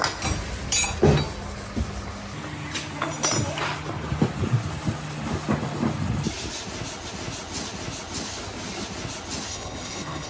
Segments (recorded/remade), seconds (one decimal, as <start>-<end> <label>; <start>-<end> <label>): 0.0-9.5 recorded; 9.5-10.3 remade